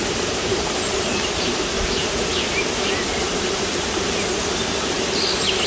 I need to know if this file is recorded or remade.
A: recorded